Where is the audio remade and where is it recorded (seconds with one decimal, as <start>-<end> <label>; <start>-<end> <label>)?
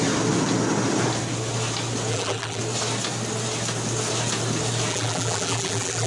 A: 0.0-2.1 recorded; 2.1-2.6 remade; 2.6-4.9 recorded; 4.9-6.1 remade